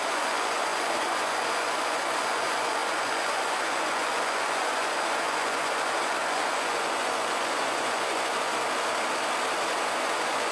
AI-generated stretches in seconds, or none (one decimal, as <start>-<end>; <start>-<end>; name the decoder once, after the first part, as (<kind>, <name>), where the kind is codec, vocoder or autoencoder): 0.0-8.5 (vocoder, Vocos); 9.7-10.5